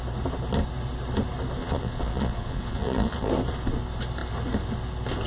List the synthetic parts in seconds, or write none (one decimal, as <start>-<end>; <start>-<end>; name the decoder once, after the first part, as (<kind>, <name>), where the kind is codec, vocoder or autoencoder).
1.6-3.3 (vocoder, Vocos)